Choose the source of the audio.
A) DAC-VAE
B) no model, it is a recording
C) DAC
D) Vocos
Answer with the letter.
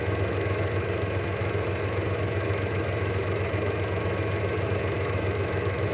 A